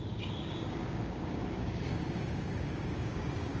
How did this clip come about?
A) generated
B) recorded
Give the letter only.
A